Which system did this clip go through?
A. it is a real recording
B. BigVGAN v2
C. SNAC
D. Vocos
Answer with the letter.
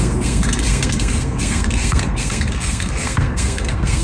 C